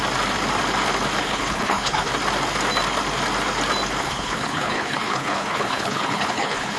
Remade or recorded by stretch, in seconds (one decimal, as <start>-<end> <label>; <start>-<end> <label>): 0.0-1.2 recorded; 1.2-2.1 remade; 2.1-4.0 recorded; 4.0-6.8 remade